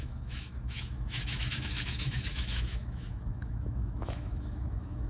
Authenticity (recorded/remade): remade